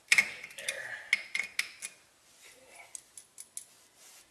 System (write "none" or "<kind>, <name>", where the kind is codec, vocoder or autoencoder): none